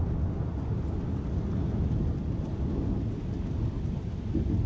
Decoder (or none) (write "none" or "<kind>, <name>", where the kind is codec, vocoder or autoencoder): none